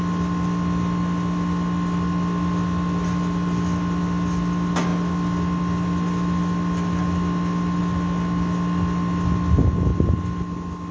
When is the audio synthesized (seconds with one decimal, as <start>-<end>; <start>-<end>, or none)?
none